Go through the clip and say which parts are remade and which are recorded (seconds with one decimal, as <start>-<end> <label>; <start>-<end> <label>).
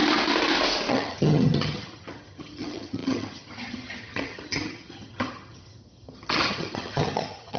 0.0-0.9 recorded; 0.9-7.6 remade